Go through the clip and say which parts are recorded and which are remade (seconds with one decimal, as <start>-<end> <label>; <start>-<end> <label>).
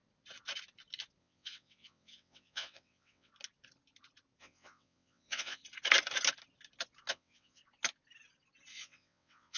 0.0-1.2 recorded; 1.2-3.3 remade; 3.3-4.4 recorded; 4.4-5.6 remade; 5.6-7.1 recorded; 7.1-7.6 remade; 7.6-8.7 recorded; 8.7-9.6 remade